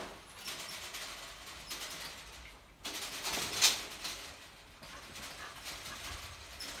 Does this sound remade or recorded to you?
recorded